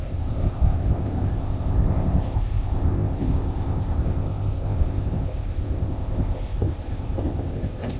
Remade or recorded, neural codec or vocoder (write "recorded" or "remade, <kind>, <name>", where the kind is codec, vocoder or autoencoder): remade, codec, ZipCodec